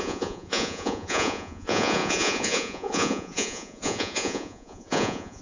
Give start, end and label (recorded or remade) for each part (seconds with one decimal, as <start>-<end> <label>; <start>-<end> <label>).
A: 0.0-5.4 remade